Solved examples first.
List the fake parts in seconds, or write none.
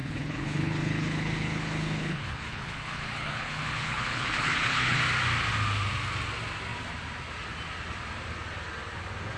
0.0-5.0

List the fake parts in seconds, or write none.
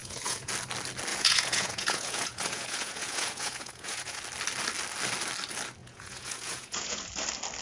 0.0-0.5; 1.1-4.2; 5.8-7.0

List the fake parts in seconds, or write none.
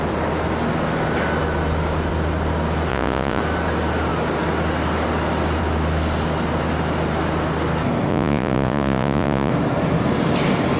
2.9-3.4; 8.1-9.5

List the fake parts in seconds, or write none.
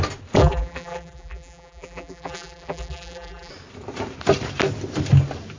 0.4-3.5